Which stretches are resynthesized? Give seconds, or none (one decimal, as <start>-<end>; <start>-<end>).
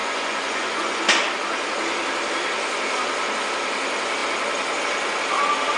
0.0-1.0